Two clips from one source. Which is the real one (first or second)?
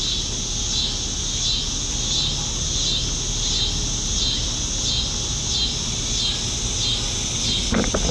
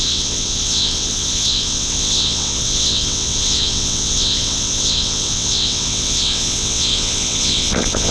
first